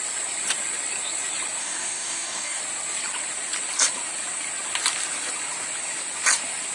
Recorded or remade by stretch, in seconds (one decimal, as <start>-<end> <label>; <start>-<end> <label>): 0.0-1.6 recorded; 1.6-2.6 remade; 2.6-6.7 recorded